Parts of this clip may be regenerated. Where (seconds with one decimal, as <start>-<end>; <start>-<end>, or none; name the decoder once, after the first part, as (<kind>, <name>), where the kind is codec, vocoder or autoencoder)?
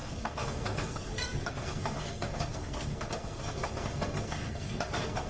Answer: 0.0-5.3 (codec, SNAC)